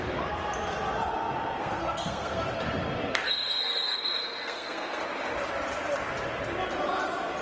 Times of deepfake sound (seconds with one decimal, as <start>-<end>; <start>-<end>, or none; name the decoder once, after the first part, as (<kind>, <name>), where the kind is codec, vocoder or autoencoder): 1.6-2.4 (codec, SNAC); 3.1-5.0